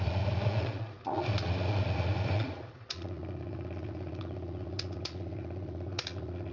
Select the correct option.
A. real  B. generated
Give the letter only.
B